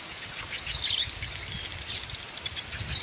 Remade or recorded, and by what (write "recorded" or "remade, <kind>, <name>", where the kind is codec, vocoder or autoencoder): recorded